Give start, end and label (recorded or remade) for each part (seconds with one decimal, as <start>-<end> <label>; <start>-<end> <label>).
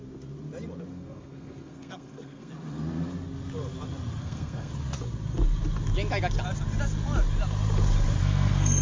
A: 0.0-0.9 recorded; 0.9-2.5 remade; 2.5-4.2 recorded; 4.2-4.7 remade; 4.7-8.2 recorded; 8.2-8.8 remade